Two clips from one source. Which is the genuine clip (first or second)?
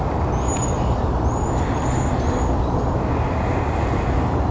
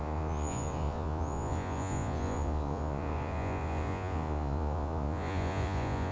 first